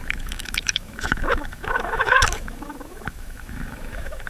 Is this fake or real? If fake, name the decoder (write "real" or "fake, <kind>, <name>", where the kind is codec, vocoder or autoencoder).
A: fake, autoencoder, DAC-VAE